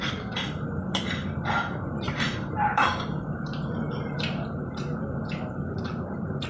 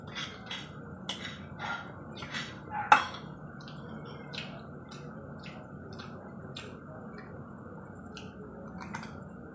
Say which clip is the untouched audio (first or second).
second